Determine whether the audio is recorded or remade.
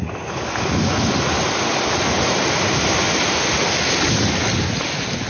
recorded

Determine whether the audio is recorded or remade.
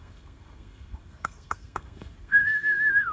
remade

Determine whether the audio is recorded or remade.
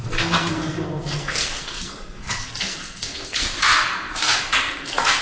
remade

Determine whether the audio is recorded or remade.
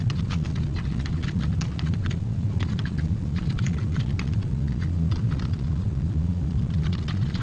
remade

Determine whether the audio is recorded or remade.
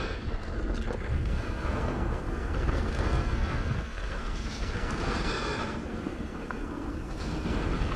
remade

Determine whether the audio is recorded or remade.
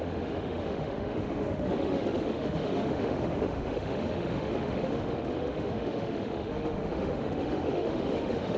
remade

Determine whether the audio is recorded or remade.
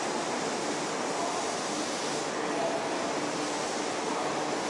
recorded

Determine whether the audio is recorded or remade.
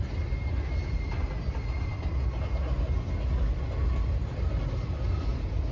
recorded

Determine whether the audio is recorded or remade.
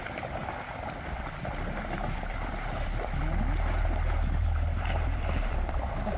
remade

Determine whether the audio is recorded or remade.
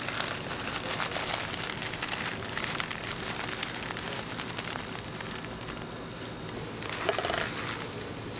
recorded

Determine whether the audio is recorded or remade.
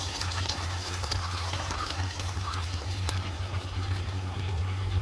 remade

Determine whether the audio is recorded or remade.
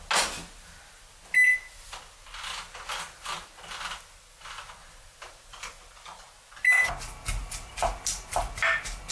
recorded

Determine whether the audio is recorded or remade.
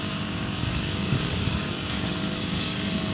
remade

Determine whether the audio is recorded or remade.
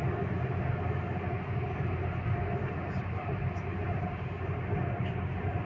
recorded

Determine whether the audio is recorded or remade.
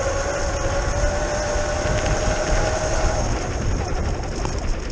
recorded